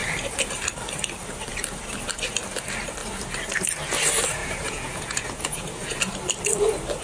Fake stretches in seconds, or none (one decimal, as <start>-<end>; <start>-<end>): 4.4-6.0